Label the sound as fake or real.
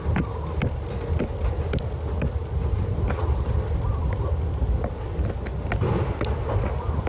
real